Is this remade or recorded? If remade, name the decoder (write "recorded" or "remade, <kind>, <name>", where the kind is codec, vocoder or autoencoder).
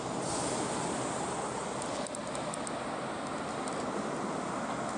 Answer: recorded